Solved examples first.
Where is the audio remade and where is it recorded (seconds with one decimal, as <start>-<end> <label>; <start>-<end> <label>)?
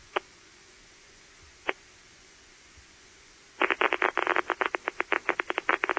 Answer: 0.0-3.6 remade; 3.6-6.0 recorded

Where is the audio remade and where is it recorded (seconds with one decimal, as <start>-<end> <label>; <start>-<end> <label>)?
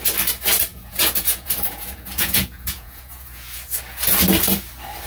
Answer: 0.0-0.7 recorded; 0.7-3.8 remade; 3.8-5.1 recorded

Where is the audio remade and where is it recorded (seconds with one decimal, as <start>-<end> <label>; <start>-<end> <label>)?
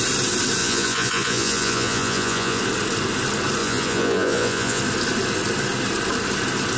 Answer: 0.0-0.6 recorded; 0.6-2.6 remade; 2.6-3.6 recorded; 3.6-4.8 remade; 4.8-6.8 recorded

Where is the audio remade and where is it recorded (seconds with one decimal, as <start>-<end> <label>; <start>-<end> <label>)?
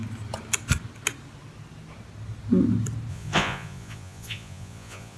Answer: 0.0-3.1 recorded; 3.1-5.2 remade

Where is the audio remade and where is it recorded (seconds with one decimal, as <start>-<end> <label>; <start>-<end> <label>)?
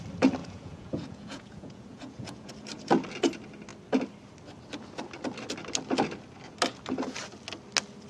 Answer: 0.0-0.4 recorded; 0.4-2.5 remade; 2.5-8.1 recorded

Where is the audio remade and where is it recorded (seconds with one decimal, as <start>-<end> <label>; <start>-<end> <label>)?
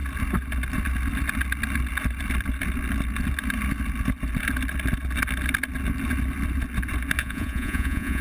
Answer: 0.0-7.2 recorded; 7.2-8.2 remade